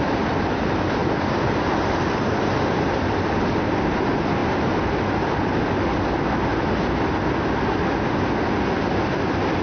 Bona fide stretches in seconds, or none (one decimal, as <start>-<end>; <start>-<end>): 0.0-9.6